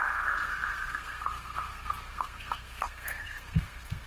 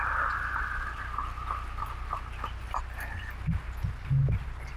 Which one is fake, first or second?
first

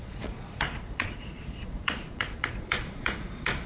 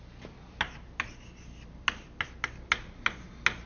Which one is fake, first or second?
first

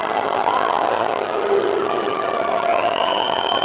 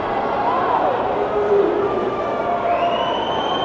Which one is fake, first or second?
first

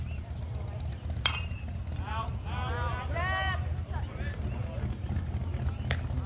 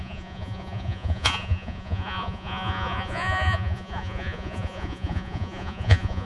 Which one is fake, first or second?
second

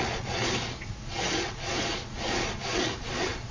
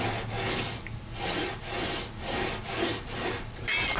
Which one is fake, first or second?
first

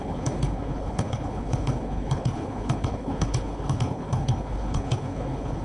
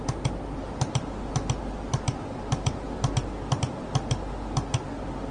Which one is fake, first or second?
first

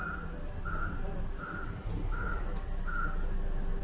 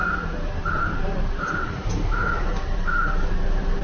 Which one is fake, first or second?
second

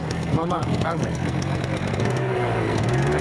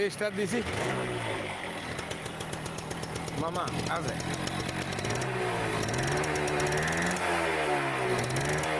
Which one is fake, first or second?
first